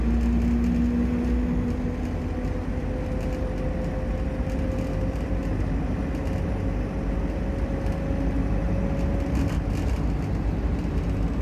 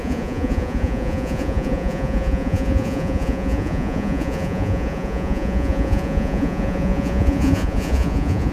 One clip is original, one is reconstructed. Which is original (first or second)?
first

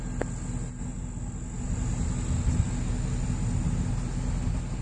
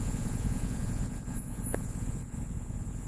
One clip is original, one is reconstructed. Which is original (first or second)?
first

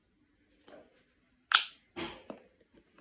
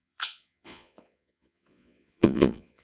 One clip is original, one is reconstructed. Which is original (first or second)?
first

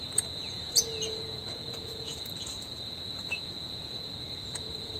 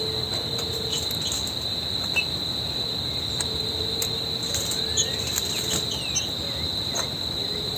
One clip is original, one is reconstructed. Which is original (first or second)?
second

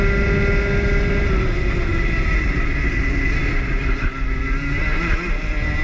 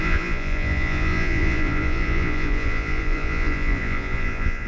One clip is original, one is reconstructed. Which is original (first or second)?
first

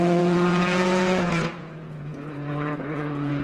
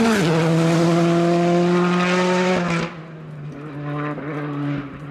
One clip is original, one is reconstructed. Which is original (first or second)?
second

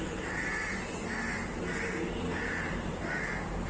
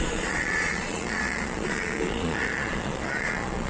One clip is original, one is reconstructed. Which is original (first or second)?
first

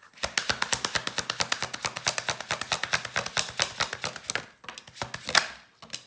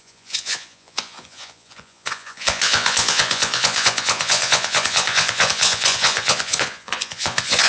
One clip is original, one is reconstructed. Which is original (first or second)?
first